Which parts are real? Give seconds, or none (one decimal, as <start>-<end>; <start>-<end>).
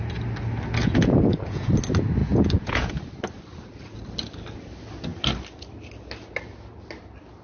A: 0.0-0.8; 1.7-2.2; 2.9-7.4